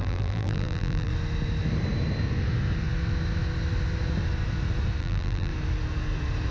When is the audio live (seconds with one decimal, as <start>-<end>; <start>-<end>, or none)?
1.1-5.0; 5.5-6.5